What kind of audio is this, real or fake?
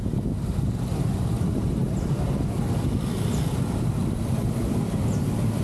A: real